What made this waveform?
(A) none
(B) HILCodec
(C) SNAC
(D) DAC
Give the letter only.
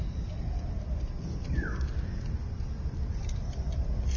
A